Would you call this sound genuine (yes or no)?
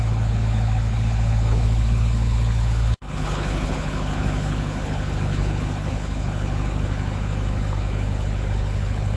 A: no